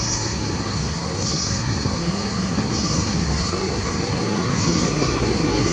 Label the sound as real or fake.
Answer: fake